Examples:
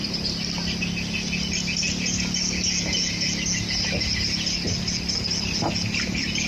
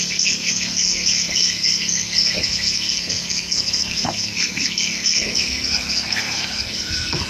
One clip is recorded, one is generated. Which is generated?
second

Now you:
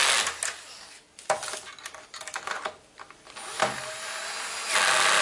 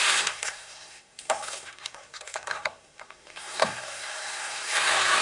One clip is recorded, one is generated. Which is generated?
second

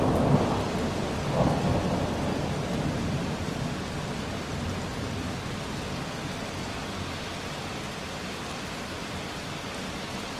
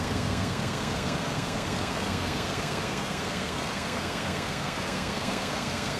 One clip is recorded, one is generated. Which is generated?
second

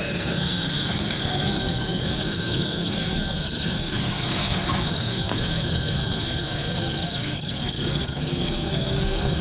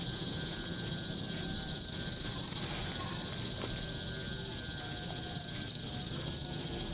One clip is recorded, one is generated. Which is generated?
first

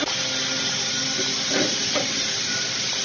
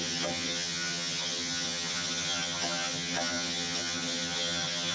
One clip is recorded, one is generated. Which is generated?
second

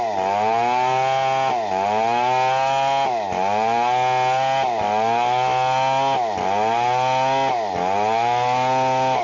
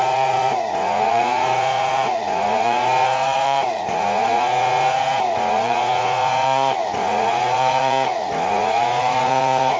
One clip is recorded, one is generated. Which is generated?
second